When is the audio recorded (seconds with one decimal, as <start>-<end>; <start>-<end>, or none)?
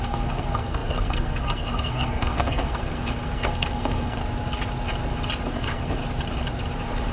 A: 4.2-5.5; 6.0-7.1